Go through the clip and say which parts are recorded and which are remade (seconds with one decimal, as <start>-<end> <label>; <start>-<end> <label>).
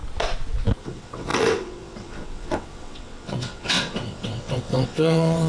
0.0-0.8 recorded; 0.8-5.5 remade